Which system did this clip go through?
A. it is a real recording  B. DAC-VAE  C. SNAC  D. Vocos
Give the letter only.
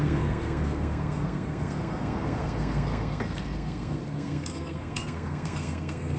C